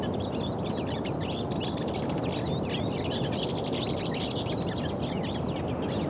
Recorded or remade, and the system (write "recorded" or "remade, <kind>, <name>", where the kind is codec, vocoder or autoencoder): recorded